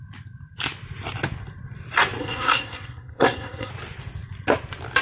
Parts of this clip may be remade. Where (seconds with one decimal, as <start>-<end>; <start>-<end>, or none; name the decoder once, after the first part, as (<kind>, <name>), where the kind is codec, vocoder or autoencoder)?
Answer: 2.2-3.7 (codec, SNAC)